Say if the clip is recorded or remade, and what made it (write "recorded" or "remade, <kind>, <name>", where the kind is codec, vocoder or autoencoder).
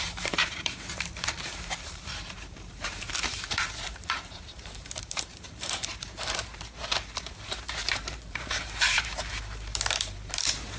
remade, vocoder, BigVGAN v2